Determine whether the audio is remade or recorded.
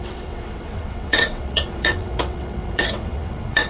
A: remade